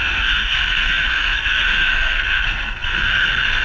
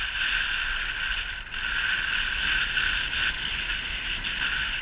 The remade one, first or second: first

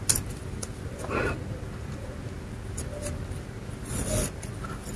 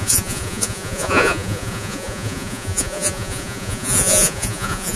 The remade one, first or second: second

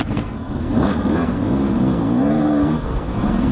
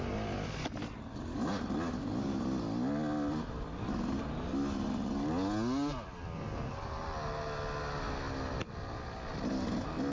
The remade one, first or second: first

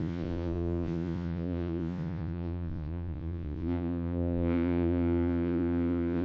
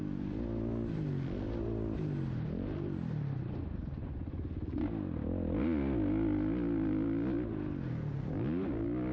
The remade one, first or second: first